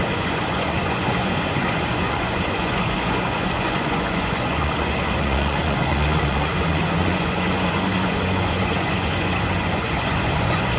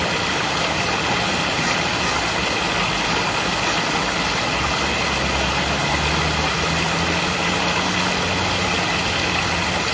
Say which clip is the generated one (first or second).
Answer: first